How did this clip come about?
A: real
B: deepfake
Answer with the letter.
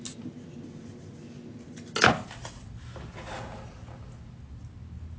A